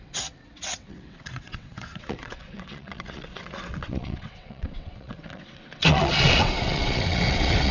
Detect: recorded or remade remade